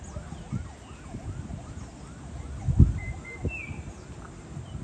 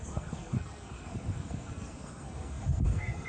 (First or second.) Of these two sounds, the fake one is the second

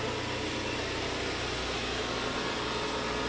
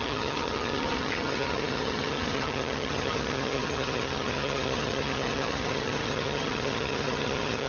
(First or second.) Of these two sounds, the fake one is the second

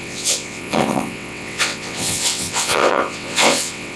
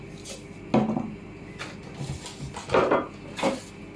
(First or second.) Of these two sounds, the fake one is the first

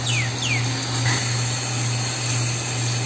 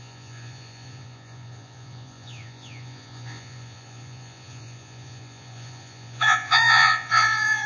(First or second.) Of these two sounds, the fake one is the second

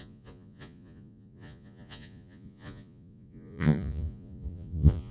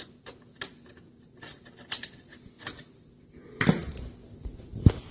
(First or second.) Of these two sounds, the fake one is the first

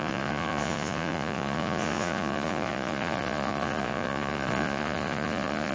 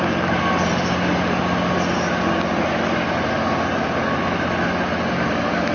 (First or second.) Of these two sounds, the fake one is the first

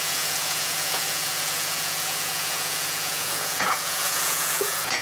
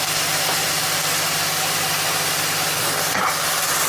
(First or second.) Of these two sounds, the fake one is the first